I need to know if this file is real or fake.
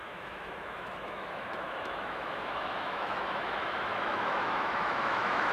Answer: fake